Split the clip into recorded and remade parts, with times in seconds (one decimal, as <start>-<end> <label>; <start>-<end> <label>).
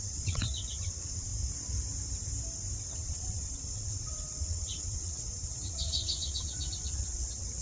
0.0-1.3 remade; 1.3-2.9 recorded; 2.9-7.6 remade